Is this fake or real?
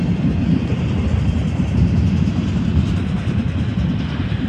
real